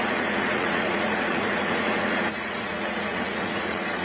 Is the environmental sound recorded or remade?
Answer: remade